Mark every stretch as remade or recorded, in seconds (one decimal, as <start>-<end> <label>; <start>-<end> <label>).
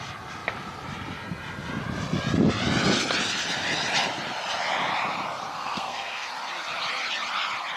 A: 0.0-5.5 recorded; 5.5-6.3 remade; 6.3-7.8 recorded